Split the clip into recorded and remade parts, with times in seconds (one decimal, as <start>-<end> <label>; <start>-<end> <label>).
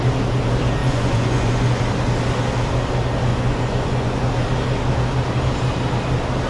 0.0-0.8 recorded; 0.8-1.8 remade; 1.8-3.3 recorded; 3.3-4.3 remade; 4.3-6.5 recorded